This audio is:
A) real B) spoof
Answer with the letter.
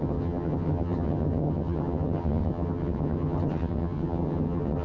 B